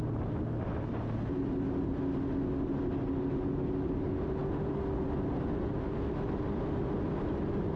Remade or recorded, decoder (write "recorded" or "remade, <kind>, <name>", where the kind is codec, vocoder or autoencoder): recorded